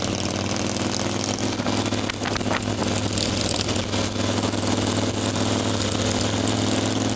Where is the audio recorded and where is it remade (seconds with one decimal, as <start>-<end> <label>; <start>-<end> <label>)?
0.0-7.2 recorded